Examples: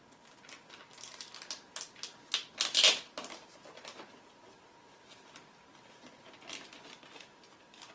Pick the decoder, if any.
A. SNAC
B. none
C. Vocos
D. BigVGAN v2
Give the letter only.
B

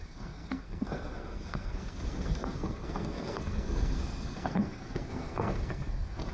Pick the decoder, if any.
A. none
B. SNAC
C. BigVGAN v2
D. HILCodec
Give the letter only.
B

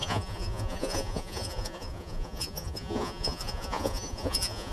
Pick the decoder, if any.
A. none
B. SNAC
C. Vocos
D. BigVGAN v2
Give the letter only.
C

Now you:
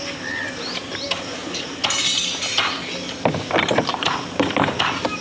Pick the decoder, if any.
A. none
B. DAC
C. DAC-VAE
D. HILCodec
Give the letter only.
A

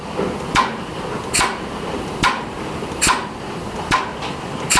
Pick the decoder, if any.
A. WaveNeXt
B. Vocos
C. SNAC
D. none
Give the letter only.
D